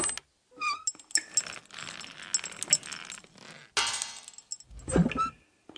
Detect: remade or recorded recorded